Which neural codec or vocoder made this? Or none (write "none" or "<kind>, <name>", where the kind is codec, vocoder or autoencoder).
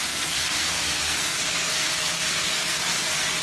codec, SNAC